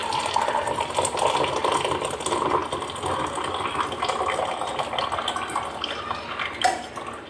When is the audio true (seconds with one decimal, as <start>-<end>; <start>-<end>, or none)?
0.0-7.3